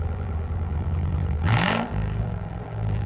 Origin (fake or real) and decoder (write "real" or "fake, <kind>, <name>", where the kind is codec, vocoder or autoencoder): fake, vocoder, BigVGAN v2